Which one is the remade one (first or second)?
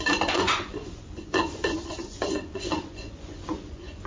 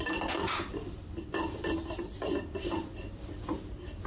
first